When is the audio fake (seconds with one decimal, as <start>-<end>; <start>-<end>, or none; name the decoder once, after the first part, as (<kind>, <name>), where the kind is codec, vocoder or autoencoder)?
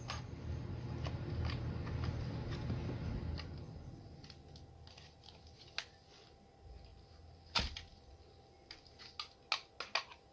none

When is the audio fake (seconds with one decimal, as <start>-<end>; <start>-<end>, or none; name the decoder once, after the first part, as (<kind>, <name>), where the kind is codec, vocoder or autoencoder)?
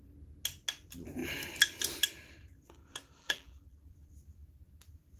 3.2-3.9 (vocoder, BigVGAN v2)